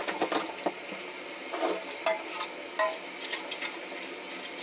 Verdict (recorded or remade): recorded